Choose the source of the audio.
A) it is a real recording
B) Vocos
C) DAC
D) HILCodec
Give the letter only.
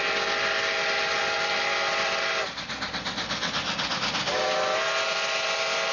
A